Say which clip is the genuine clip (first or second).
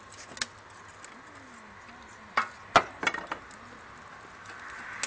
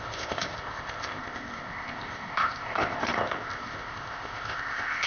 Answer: first